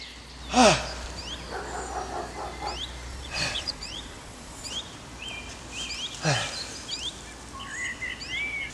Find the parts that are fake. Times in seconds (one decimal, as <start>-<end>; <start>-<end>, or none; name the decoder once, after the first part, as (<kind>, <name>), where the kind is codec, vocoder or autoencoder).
3.1-4.7 (vocoder, Vocos)